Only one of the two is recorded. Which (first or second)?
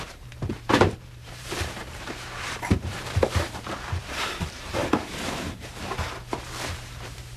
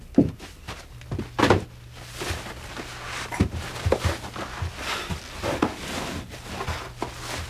second